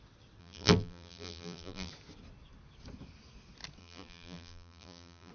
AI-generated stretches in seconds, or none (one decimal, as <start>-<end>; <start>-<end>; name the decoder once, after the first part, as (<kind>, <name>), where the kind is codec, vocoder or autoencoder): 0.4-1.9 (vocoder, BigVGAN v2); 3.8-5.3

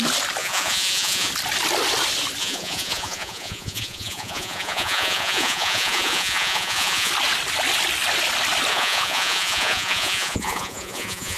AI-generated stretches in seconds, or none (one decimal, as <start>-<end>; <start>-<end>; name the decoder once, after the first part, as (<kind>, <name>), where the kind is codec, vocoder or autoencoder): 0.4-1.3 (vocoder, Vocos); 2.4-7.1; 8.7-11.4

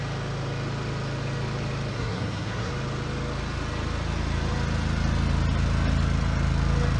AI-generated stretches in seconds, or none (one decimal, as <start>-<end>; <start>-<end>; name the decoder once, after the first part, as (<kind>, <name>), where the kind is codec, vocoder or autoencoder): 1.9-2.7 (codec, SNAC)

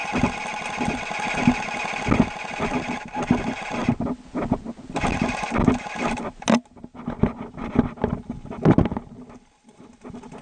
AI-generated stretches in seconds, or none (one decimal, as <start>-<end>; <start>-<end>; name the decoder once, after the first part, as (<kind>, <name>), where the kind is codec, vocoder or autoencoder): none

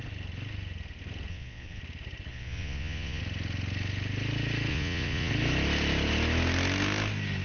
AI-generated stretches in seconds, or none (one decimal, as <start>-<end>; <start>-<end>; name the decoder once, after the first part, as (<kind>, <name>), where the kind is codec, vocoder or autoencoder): 1.3-1.8 (vocoder, Vocos); 2.3-3.2; 4.7-5.3